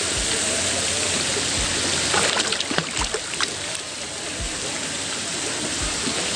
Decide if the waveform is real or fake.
real